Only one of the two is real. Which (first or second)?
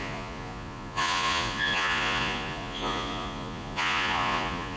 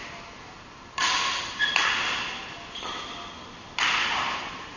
second